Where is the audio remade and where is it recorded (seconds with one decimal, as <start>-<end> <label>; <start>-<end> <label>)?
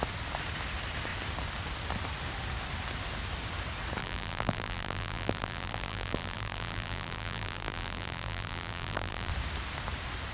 0.0-4.0 recorded; 4.0-9.3 remade; 9.3-10.3 recorded